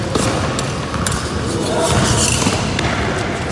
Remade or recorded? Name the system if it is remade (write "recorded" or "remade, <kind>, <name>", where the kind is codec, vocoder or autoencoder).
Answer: recorded